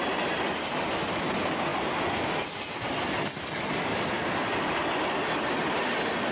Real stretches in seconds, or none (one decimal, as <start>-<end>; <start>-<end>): 0.0-6.3